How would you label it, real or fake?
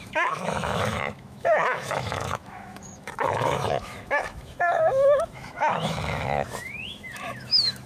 fake